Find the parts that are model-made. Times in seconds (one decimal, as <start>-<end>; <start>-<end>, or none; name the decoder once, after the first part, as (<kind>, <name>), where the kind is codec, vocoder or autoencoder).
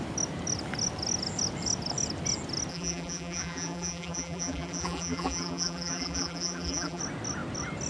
2.7-7.0 (vocoder, BigVGAN v2)